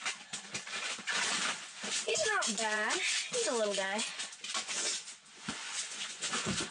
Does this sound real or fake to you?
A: fake